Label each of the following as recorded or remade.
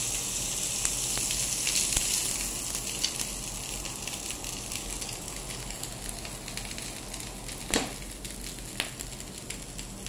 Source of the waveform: recorded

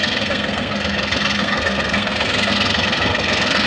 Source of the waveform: remade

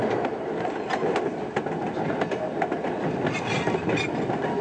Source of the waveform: recorded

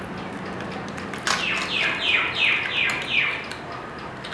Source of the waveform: recorded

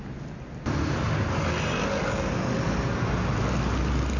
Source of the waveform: recorded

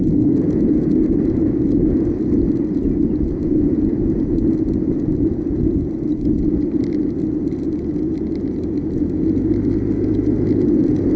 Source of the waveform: recorded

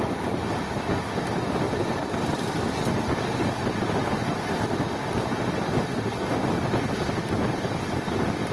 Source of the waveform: recorded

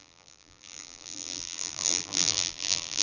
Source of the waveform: remade